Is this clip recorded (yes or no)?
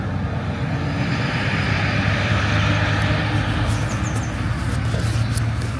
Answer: yes